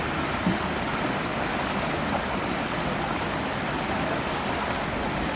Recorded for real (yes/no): yes